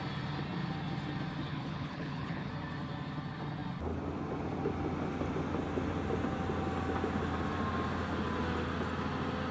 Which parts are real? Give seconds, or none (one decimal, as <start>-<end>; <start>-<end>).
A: 0.0-1.5; 2.5-9.5